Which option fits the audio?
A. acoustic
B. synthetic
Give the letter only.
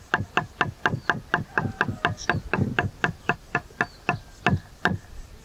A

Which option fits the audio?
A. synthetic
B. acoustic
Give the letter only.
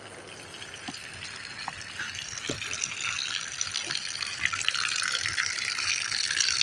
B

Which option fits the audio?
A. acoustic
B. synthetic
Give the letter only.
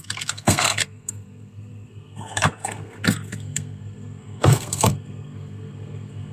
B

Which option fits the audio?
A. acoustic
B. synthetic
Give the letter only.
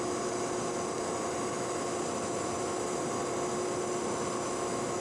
A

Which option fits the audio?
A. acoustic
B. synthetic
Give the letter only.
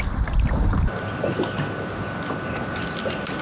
A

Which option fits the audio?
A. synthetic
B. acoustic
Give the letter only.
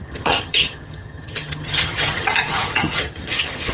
A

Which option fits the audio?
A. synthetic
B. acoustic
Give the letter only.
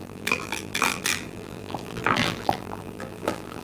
A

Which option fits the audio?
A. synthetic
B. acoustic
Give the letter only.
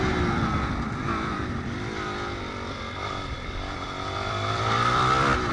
A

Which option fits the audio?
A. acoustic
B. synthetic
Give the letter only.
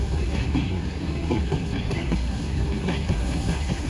B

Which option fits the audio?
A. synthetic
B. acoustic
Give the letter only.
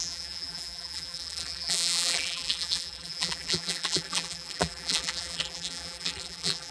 A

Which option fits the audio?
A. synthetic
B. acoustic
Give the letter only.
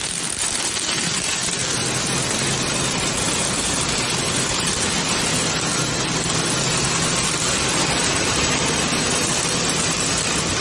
B